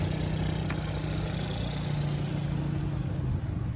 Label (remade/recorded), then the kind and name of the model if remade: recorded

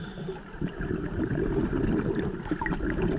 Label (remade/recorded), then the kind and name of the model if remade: remade, vocoder, BigVGAN v2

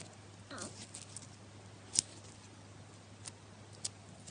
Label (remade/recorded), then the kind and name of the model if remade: recorded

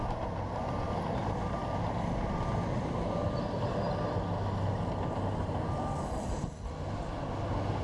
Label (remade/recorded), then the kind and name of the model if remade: recorded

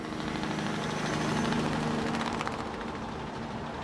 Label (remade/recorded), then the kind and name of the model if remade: recorded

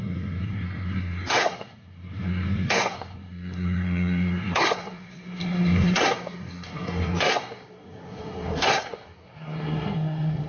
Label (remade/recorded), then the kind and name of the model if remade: remade, codec, SNAC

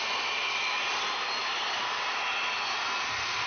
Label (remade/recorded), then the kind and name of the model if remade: recorded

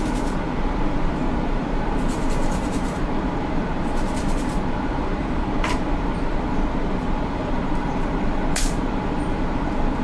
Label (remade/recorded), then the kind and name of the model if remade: remade, vocoder, BigVGAN v2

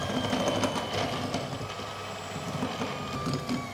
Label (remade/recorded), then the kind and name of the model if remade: recorded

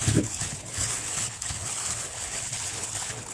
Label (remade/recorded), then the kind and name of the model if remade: remade, codec, HILCodec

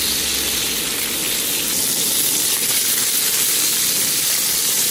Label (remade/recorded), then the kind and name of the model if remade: recorded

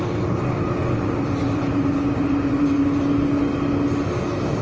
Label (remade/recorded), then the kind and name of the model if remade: recorded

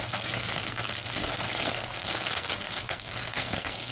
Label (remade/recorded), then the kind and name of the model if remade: remade, codec, SNAC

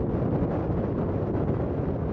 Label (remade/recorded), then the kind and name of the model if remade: recorded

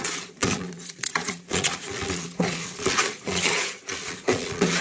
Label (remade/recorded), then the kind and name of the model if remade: remade, vocoder, Vocos